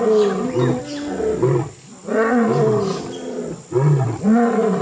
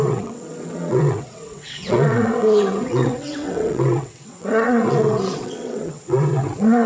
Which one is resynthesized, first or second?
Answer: second